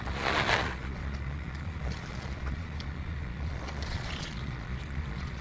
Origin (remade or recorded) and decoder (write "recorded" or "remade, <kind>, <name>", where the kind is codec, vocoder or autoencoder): remade, vocoder, Vocos